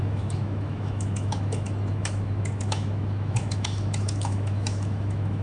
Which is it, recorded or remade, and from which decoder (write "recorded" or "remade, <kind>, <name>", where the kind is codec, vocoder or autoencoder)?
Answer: remade, autoencoder, DAC-VAE